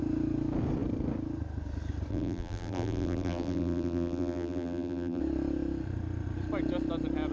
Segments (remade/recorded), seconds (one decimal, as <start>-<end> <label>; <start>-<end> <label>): 0.0-2.1 recorded; 2.1-5.2 remade; 5.2-7.3 recorded